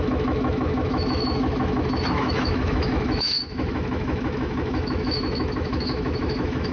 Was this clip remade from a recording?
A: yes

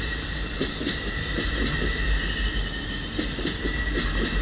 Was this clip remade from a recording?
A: no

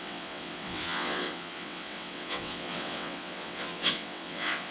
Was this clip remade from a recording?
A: yes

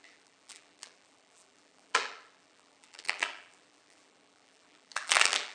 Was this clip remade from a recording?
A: yes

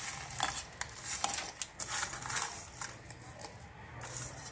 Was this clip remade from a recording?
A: no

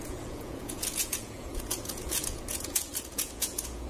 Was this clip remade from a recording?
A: yes